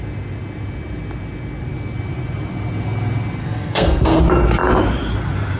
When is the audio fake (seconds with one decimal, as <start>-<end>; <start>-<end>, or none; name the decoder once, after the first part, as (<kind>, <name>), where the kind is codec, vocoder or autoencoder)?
3.4-4.2 (codec, SNAC)